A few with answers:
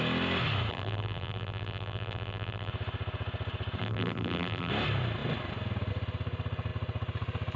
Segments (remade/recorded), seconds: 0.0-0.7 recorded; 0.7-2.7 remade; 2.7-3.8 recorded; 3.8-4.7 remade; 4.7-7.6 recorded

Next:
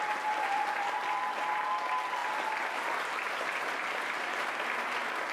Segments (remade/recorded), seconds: 0.0-5.3 recorded

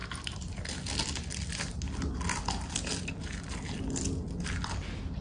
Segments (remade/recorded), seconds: 0.0-5.2 recorded

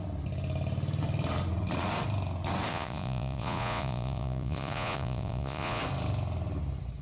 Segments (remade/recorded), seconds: 0.0-2.7 recorded; 2.7-5.8 remade; 5.8-7.0 recorded

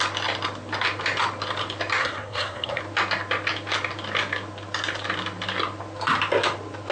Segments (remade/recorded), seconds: 0.0-2.0 recorded; 2.0-2.8 remade; 2.8-6.9 recorded

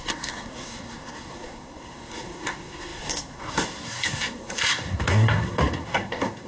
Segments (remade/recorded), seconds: 0.0-6.5 remade

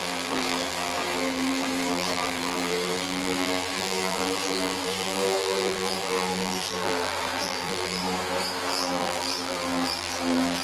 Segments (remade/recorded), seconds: 0.0-8.0 remade; 8.0-8.6 recorded; 8.6-10.6 remade